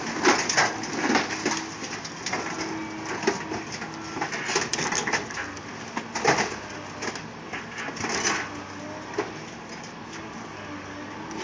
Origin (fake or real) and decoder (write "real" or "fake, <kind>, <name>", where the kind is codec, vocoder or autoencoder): real